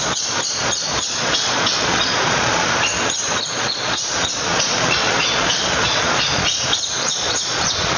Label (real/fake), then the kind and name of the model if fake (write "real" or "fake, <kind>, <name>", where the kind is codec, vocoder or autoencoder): fake, vocoder, Vocos